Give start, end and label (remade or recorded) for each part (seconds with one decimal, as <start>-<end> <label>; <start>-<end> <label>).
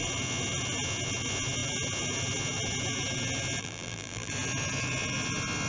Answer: 0.0-3.6 recorded; 3.6-4.3 remade; 4.3-5.7 recorded